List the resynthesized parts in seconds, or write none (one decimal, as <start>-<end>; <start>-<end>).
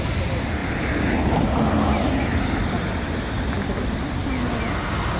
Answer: none